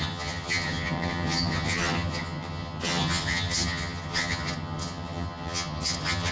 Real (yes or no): no